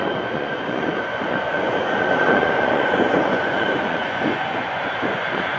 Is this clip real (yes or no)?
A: no